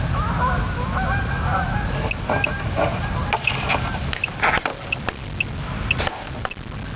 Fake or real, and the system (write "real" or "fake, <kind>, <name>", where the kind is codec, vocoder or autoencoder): real